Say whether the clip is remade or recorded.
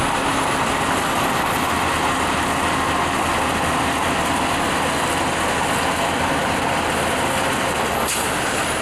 recorded